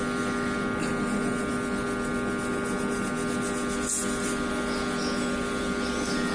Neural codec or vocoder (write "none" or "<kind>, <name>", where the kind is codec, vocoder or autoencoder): none